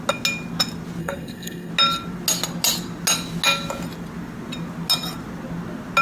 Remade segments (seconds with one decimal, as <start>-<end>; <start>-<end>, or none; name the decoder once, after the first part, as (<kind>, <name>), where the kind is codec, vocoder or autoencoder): 1.0-1.7 (codec, SNAC)

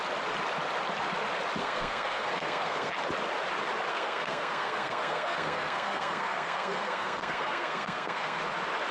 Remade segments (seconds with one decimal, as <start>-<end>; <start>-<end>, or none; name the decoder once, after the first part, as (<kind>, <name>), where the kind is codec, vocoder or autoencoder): 1.6-2.9 (codec, SNAC); 3.9-8.4

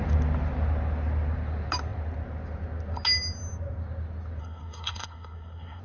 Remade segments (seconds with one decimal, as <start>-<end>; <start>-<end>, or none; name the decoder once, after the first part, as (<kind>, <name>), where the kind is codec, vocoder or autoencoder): 4.4-5.8 (codec, SNAC)

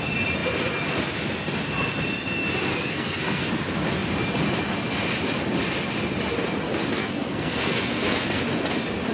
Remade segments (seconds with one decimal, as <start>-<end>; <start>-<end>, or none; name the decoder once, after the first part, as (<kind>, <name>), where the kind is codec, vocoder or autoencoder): 2.7-3.5 (codec, SNAC); 7.0-8.4

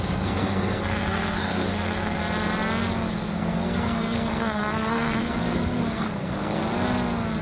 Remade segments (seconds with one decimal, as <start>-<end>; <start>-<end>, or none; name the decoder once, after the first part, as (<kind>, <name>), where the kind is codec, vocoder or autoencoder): 0.0-2.2 (codec, SNAC); 3.1-6.6